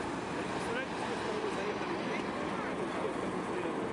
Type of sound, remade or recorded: recorded